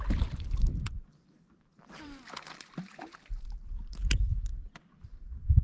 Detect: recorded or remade remade